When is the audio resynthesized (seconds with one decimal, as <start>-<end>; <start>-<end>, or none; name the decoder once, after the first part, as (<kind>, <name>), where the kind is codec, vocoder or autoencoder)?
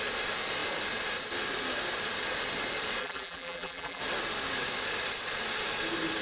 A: 3.0-4.0 (vocoder, BigVGAN v2)